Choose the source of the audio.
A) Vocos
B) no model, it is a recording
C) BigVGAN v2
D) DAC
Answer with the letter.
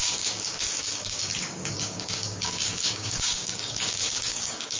D